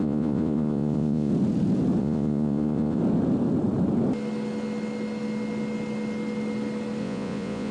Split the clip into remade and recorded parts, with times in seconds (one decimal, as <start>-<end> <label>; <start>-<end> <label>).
0.0-1.3 remade; 1.3-2.0 recorded; 2.0-3.0 remade; 3.0-7.0 recorded; 7.0-7.7 remade